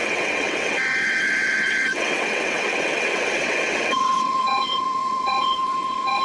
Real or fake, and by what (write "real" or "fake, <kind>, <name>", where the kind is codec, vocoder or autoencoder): fake, vocoder, WaveNeXt